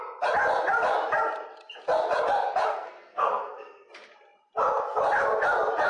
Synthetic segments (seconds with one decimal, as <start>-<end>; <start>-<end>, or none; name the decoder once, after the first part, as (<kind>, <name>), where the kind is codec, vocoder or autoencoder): 2.7-3.9 (codec, SNAC)